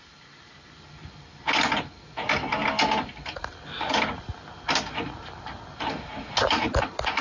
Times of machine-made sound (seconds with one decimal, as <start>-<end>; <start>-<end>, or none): none